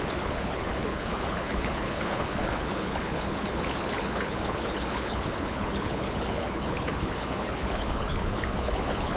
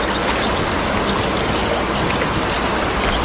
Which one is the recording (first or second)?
second